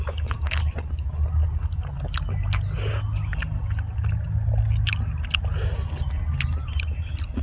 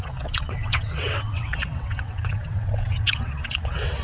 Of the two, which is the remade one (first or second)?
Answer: second